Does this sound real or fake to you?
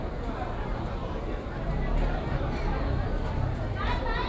real